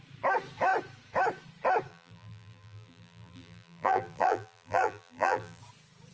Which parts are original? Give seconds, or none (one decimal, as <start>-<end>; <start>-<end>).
0.0-1.9; 5.6-6.1